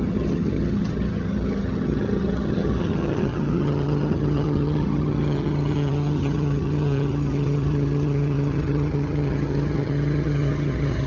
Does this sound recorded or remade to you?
remade